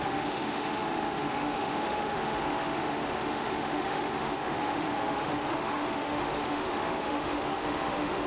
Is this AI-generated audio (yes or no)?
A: yes